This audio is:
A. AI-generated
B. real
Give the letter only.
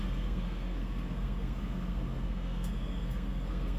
A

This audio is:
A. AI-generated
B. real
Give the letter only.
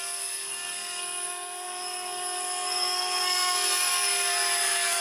A